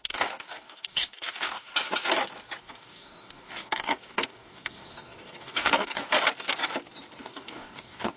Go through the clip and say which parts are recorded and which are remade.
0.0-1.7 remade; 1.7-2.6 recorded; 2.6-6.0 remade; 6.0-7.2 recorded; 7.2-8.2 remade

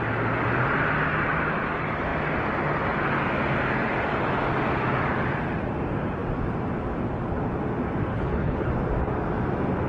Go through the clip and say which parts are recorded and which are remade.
0.0-8.1 recorded; 8.1-8.7 remade; 8.7-9.9 recorded

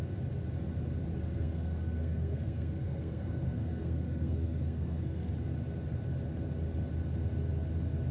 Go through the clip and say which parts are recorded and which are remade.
0.0-1.1 recorded; 1.1-5.3 remade; 5.3-8.1 recorded

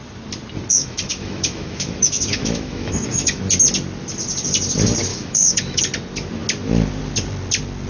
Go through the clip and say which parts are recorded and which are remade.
0.0-0.7 recorded; 0.7-3.4 remade; 3.4-5.1 recorded; 5.1-5.8 remade; 5.8-7.9 recorded

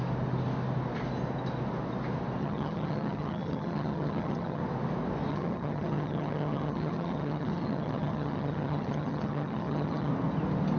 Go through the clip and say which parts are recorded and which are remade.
0.0-2.4 recorded; 2.4-4.6 remade; 4.6-5.3 recorded; 5.3-10.1 remade; 10.1-10.8 recorded

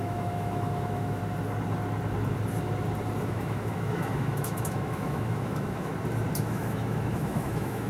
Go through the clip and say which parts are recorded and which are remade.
0.0-1.2 remade; 1.2-3.2 recorded; 3.2-5.9 remade; 5.9-6.4 recorded; 6.4-7.9 remade

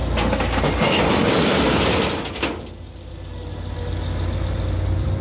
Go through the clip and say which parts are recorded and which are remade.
0.0-5.2 recorded